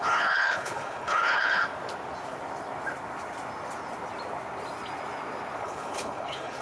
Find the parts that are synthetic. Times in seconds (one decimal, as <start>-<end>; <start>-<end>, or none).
0.0-1.6; 5.6-6.6